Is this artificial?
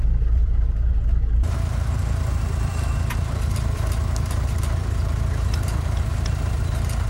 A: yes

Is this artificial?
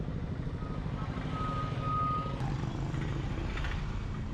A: no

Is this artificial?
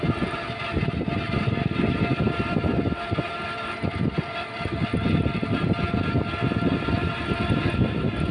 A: no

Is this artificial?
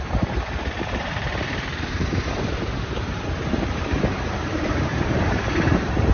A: yes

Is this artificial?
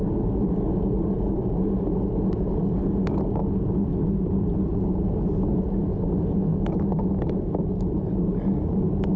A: no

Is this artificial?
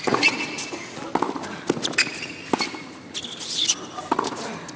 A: no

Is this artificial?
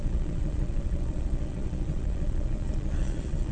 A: yes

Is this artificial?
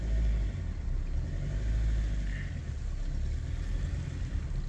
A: no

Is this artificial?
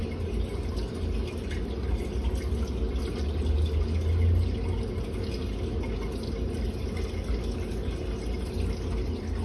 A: no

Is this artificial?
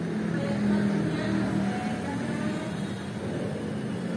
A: no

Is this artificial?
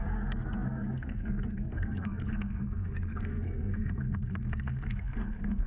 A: yes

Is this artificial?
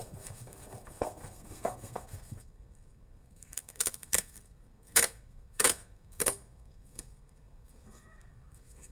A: yes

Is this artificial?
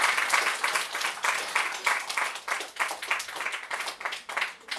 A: no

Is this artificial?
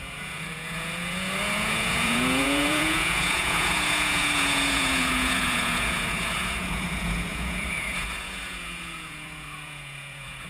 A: yes